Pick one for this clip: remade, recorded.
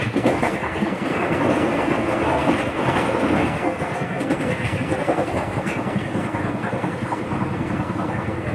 remade